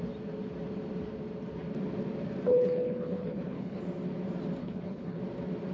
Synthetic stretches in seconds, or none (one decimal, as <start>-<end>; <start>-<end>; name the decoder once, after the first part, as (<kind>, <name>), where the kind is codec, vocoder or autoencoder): 2.5-3.8 (codec, HILCodec); 4.6-5.2